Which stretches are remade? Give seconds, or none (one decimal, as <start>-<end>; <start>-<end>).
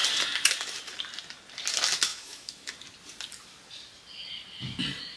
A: 2.1-2.7